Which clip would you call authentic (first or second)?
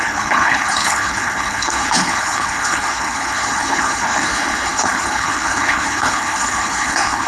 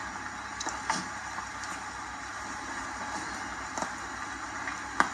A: second